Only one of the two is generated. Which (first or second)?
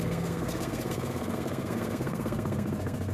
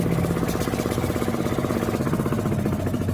first